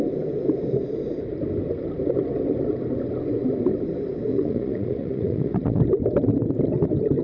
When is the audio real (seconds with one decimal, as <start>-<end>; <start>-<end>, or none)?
0.0-4.3; 5.8-7.2